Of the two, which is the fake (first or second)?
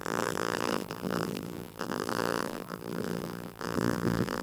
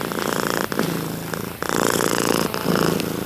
first